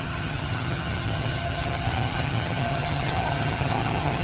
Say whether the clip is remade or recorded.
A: remade